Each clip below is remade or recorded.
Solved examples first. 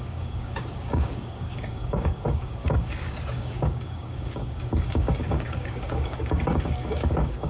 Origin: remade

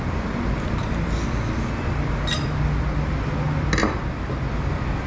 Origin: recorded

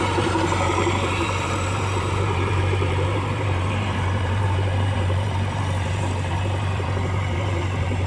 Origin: remade